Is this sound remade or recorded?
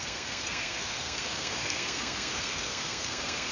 remade